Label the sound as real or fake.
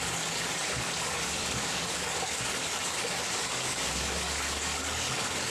fake